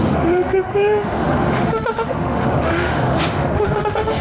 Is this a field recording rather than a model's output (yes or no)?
no